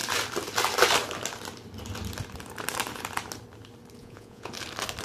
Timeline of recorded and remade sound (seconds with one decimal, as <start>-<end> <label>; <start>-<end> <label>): 0.0-4.0 recorded; 4.0-4.5 remade; 4.5-5.0 recorded